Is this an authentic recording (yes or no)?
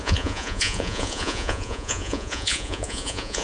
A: no